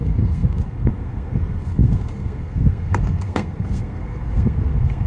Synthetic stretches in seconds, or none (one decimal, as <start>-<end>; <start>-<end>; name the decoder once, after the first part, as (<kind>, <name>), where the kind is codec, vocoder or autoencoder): 0.0-5.1 (codec, SNAC)